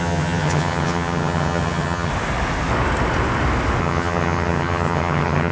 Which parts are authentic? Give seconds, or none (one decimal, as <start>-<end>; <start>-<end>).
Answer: 2.1-3.8